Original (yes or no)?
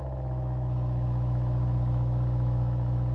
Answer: no